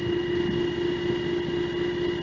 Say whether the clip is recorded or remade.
recorded